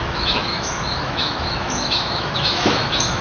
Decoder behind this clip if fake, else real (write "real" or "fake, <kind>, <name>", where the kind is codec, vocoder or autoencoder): fake, autoencoder, DAC-VAE